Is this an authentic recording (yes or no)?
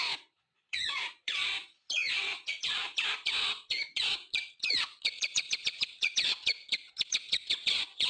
no